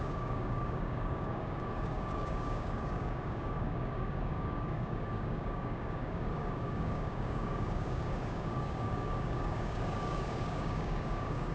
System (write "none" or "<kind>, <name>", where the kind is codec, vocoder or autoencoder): codec, DAC